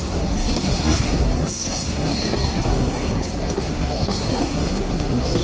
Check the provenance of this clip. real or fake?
fake